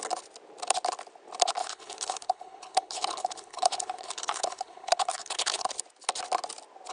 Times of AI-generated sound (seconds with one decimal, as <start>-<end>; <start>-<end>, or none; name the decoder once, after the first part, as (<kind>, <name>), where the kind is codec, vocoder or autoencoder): 1.6-5.7 (codec, HILCodec)